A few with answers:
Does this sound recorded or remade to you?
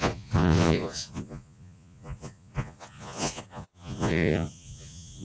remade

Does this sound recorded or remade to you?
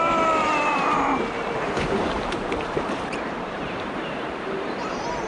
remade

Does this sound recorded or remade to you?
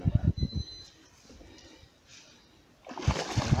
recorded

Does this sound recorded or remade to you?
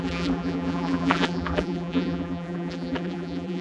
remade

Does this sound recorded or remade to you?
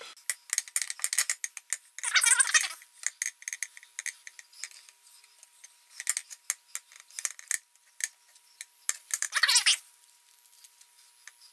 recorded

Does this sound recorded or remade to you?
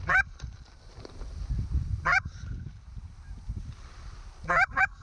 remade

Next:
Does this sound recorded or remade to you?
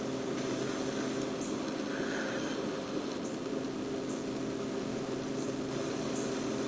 recorded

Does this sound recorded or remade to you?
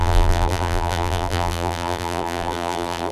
remade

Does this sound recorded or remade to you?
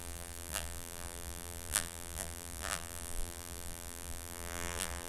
remade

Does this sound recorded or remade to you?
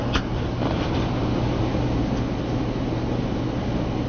recorded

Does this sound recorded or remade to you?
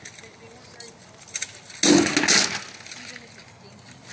recorded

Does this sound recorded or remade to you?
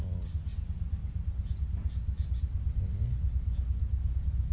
recorded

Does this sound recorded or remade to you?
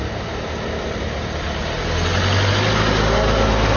recorded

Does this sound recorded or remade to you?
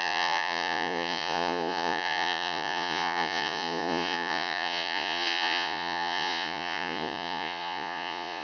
remade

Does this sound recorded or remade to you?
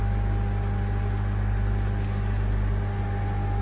recorded